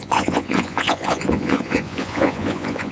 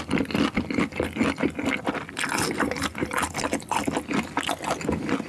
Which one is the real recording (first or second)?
second